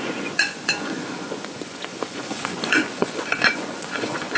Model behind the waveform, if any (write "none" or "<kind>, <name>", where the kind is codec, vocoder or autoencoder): vocoder, Vocos